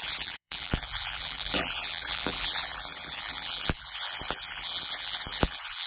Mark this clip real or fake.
fake